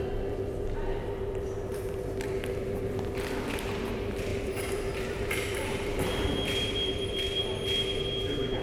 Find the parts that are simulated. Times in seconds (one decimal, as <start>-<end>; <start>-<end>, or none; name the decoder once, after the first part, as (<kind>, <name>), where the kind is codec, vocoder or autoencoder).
4.3-7.4 (vocoder, BigVGAN v2)